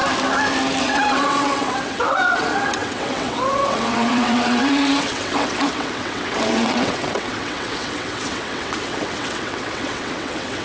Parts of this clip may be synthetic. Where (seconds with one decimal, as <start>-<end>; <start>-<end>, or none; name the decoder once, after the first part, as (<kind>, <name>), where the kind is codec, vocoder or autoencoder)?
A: 0.8-10.6 (vocoder, WaveNeXt)